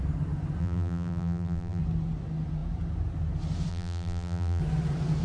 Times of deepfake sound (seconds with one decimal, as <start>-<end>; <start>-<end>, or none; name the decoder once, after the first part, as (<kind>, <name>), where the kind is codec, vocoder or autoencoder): 0.6-1.8 (vocoder, BigVGAN v2); 3.7-4.6